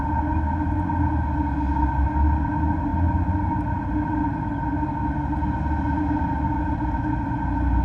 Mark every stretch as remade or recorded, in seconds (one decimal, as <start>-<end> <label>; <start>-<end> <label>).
0.0-7.8 recorded

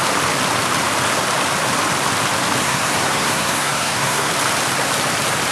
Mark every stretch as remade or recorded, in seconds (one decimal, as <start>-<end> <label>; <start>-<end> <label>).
0.0-2.6 recorded; 2.6-4.3 remade; 4.3-5.5 recorded

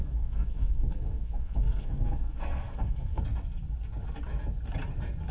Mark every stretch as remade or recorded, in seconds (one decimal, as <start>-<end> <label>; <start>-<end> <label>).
0.0-3.2 remade; 3.2-5.3 recorded

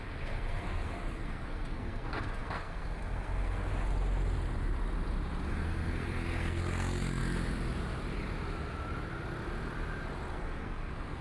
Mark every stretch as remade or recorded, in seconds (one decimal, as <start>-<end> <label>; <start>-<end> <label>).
0.0-3.7 remade; 3.7-5.5 recorded; 5.5-7.2 remade; 7.2-10.3 recorded; 10.3-11.2 remade